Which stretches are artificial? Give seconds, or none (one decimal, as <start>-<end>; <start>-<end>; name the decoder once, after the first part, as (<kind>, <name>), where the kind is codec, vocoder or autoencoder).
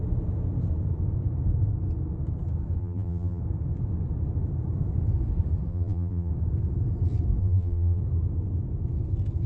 2.8-3.4 (vocoder, BigVGAN v2); 5.7-6.3; 7.4-8.0